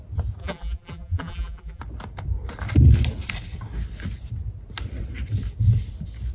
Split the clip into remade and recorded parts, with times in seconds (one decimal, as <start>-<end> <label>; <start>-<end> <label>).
0.0-0.4 recorded; 0.4-1.8 remade; 1.8-6.3 recorded